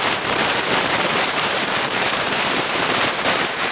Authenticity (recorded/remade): remade